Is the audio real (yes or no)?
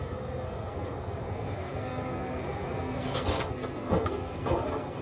no